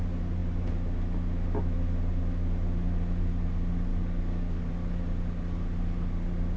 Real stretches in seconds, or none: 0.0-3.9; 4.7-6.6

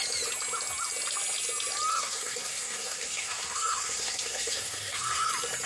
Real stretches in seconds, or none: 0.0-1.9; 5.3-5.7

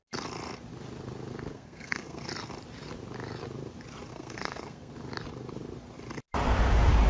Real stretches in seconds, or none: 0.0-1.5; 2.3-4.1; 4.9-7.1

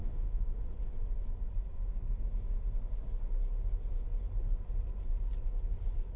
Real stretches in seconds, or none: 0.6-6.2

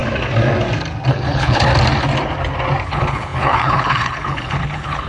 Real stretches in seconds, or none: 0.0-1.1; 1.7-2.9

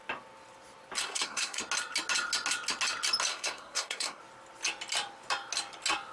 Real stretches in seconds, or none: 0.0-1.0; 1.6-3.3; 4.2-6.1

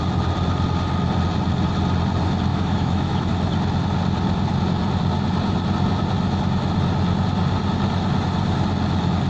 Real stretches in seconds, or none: 0.0-2.5; 3.3-9.3